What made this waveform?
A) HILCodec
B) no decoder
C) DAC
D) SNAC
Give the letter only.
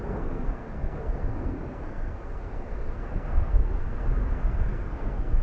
D